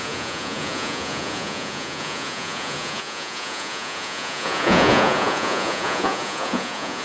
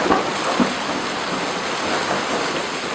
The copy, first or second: first